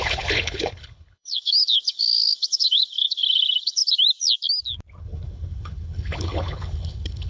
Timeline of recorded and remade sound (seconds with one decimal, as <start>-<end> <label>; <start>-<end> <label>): 0.0-3.8 remade; 3.8-5.0 recorded; 5.0-7.3 remade